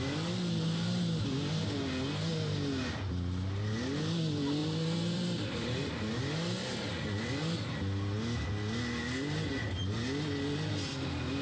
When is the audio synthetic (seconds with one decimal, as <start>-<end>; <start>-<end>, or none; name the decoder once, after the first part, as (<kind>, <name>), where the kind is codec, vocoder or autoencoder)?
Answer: 4.6-5.9 (vocoder, BigVGAN v2)